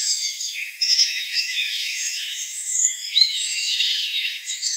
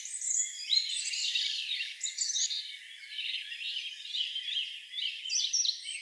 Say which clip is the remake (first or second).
first